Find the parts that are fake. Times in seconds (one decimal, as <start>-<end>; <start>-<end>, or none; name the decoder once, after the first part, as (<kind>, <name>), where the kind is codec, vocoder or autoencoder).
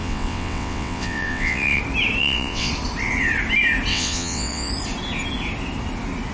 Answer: 0.0-1.8 (vocoder, WaveNeXt); 2.2-2.7; 3.9-4.7